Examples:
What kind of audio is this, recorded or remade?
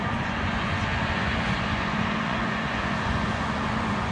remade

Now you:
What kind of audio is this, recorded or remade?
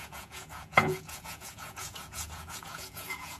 remade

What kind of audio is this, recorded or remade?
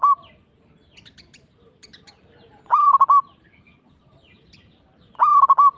recorded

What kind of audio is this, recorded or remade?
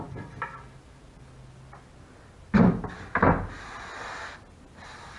recorded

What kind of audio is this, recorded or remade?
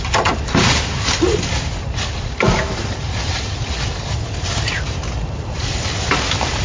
recorded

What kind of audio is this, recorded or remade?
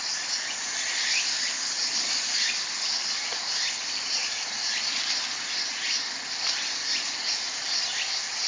recorded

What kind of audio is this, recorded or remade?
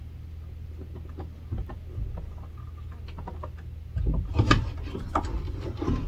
recorded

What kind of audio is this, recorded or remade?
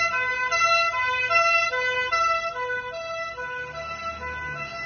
recorded